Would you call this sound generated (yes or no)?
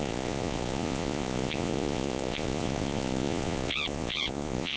yes